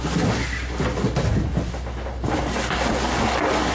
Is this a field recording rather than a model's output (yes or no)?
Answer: yes